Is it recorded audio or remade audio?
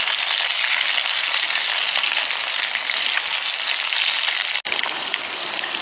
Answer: recorded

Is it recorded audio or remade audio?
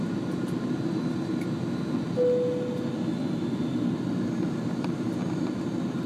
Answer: recorded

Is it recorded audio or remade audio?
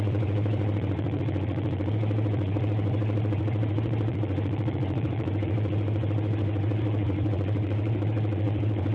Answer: remade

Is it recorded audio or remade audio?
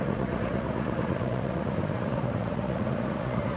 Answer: remade